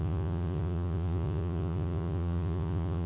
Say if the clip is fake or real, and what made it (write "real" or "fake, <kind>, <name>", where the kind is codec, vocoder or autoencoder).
fake, vocoder, Vocos